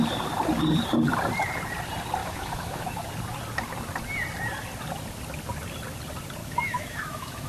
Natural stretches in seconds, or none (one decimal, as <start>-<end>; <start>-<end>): 0.0-2.2; 3.0-6.4